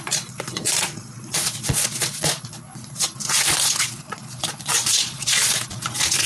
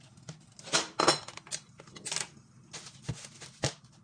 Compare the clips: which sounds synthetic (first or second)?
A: first